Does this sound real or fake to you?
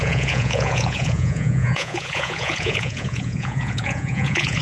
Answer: fake